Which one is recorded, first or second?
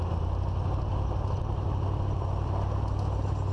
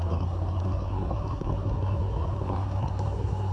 first